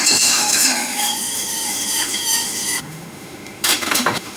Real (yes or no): no